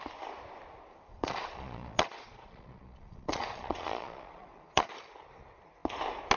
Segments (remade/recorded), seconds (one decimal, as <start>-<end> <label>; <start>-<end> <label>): 0.0-1.1 recorded; 1.1-4.9 remade; 4.9-6.4 recorded